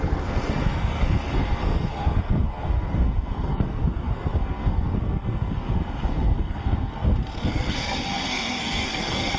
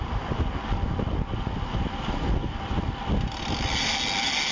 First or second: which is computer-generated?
first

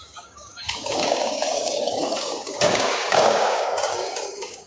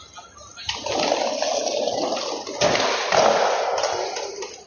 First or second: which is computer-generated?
first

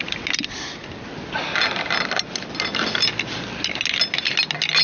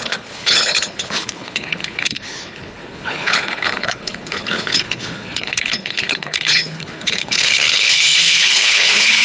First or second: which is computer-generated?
second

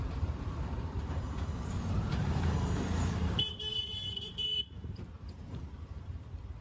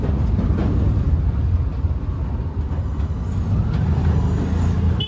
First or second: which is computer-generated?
first